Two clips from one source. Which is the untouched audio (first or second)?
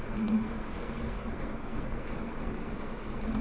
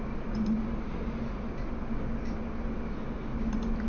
second